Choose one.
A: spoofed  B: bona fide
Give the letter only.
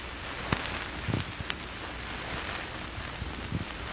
B